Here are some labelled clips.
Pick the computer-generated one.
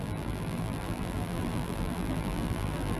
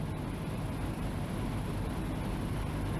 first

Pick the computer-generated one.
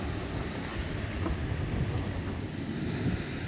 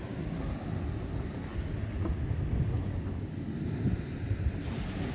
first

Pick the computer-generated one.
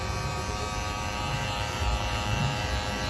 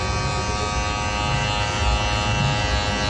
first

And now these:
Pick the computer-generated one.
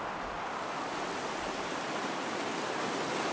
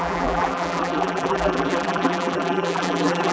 second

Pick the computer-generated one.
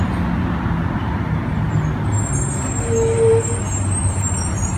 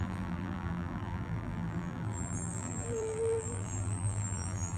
second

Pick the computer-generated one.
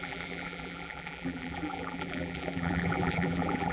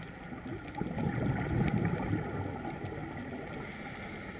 first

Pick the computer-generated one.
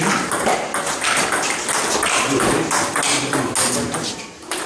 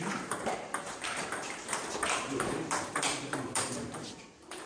second